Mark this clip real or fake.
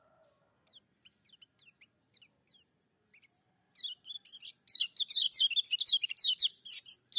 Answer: real